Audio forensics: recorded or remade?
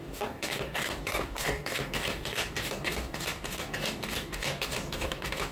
remade